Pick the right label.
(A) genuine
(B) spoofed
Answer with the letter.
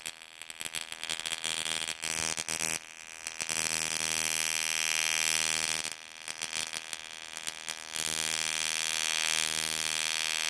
A